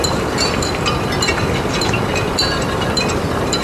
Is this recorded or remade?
remade